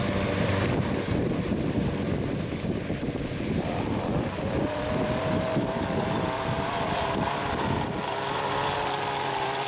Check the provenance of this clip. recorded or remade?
remade